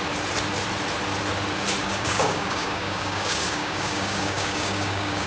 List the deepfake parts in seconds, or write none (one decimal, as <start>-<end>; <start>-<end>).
1.8-5.3